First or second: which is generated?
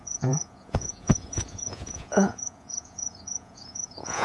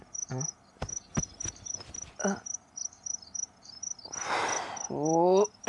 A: first